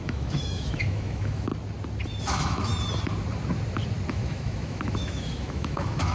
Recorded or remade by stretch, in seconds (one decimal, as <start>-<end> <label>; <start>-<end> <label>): 0.0-1.5 remade; 1.5-2.2 recorded; 2.2-2.7 remade; 2.7-4.1 recorded; 4.1-6.1 remade